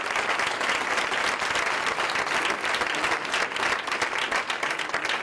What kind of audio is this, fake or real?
real